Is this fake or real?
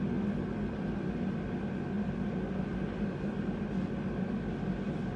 real